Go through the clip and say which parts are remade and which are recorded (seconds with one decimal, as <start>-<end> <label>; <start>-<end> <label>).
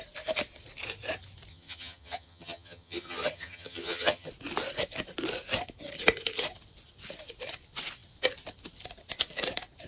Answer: 0.0-1.5 recorded; 1.5-4.3 remade; 4.3-9.9 recorded